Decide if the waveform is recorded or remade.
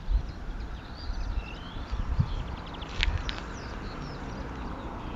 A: remade